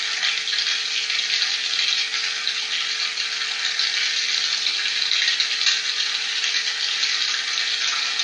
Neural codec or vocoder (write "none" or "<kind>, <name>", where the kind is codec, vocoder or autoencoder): none